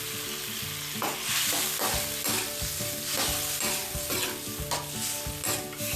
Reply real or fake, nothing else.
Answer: real